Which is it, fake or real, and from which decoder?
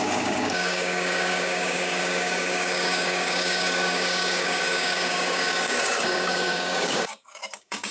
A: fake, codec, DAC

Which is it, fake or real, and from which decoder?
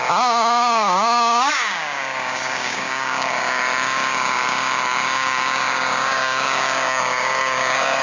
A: fake, codec, DAC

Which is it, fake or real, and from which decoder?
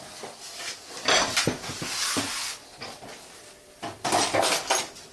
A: real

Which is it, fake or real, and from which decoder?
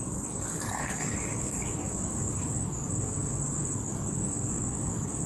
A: fake, codec, DAC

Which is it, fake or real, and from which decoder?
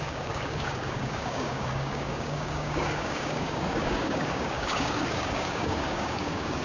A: fake, codec, DAC